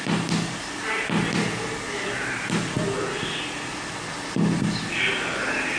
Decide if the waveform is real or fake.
real